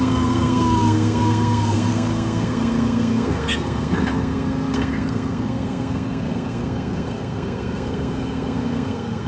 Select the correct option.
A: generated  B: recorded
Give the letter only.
A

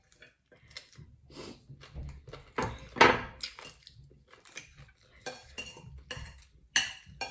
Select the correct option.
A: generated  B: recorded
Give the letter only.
B